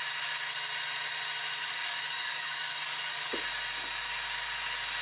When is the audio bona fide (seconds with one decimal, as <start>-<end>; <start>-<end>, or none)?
0.0-1.6; 3.3-5.0

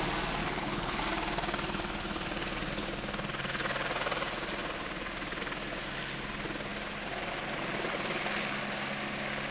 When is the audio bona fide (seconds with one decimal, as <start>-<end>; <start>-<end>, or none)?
0.0-0.4; 1.0-9.5